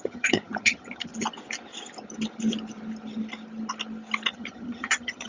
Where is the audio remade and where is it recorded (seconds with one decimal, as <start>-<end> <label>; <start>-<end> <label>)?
0.0-1.1 remade; 1.1-4.3 recorded; 4.3-5.3 remade